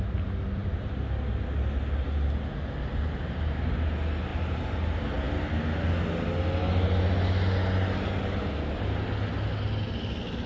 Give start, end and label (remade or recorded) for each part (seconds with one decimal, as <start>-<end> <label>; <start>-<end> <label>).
0.0-10.5 recorded